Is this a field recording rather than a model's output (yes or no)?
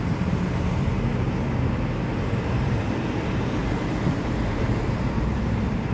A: no